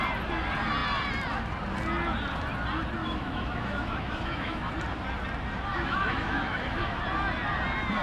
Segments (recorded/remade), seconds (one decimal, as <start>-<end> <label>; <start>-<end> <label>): 0.0-3.0 recorded; 3.0-4.7 remade; 4.7-5.7 recorded; 5.7-7.0 remade; 7.0-8.0 recorded

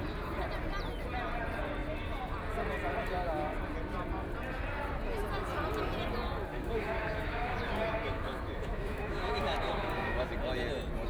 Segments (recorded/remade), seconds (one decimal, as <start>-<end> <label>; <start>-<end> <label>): 0.0-6.5 recorded; 6.5-10.3 remade; 10.3-11.1 recorded

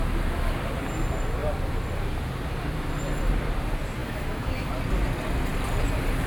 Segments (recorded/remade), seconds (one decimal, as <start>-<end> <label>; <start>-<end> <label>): 0.0-4.0 recorded; 4.0-4.7 remade; 4.7-6.3 recorded

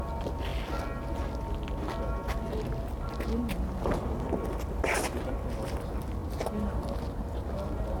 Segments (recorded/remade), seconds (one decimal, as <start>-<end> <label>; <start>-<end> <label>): 0.0-8.0 recorded

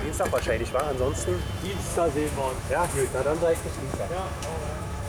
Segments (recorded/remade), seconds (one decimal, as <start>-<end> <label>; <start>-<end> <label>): 0.0-1.9 recorded; 1.9-5.1 remade

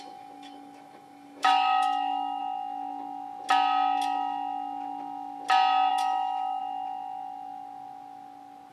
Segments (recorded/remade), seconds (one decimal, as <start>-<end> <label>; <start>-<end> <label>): 0.0-2.4 remade; 2.4-5.9 recorded; 5.9-6.6 remade; 6.6-8.7 recorded

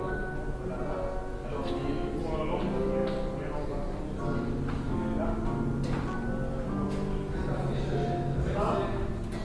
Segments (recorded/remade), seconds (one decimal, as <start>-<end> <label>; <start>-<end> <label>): 0.0-9.4 recorded

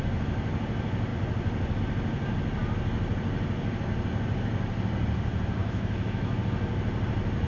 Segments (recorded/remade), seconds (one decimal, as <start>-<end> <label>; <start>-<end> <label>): 0.0-5.6 recorded; 5.6-6.4 remade; 6.4-7.5 recorded